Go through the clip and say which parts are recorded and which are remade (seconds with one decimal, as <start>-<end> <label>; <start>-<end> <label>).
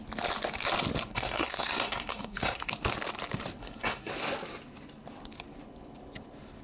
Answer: 0.0-1.1 recorded; 1.1-2.7 remade; 2.7-3.6 recorded; 3.6-4.1 remade; 4.1-6.6 recorded